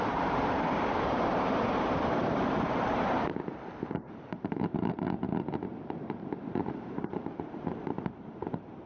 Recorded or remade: remade